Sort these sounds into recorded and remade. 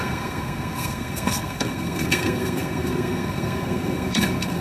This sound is remade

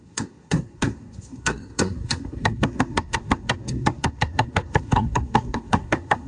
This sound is remade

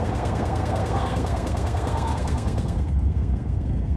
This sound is remade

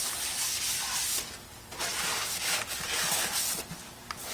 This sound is recorded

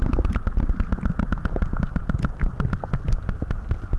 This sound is recorded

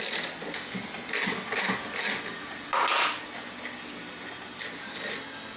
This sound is recorded